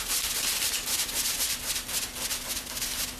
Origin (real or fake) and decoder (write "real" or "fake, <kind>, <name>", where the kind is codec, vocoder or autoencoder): real